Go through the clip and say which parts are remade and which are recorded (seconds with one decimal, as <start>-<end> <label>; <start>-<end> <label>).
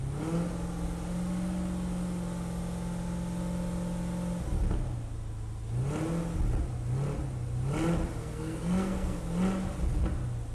0.0-8.2 recorded; 8.2-9.2 remade; 9.2-10.5 recorded